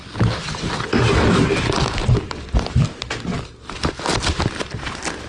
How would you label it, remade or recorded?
recorded